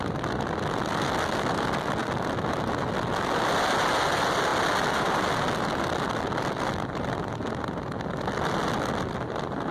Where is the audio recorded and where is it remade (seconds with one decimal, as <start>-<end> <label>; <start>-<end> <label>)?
0.0-9.7 recorded